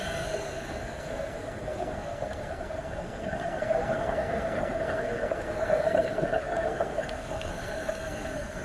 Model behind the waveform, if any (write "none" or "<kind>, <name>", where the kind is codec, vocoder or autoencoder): codec, SNAC